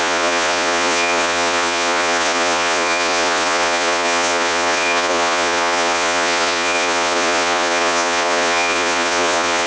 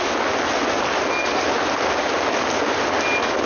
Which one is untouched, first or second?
second